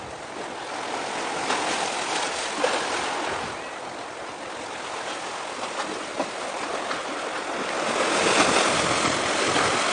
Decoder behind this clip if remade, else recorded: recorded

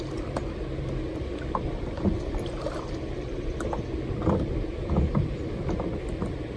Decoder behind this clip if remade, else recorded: recorded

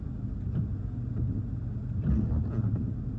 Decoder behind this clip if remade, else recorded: recorded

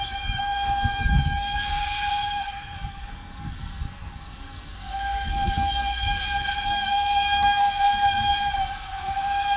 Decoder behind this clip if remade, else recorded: remade, codec, SNAC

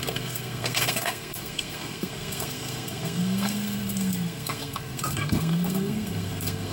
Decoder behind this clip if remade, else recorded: remade, codec, SNAC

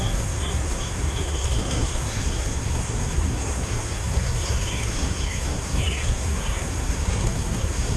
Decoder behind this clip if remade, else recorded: remade, codec, SNAC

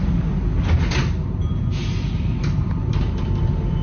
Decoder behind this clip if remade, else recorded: recorded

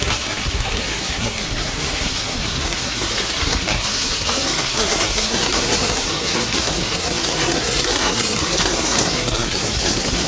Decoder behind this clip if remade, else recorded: remade, codec, SNAC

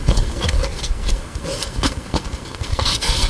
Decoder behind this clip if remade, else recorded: remade, codec, SNAC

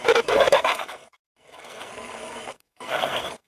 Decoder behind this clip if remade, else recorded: remade, codec, SNAC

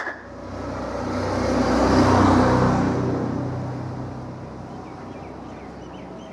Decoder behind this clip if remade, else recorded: recorded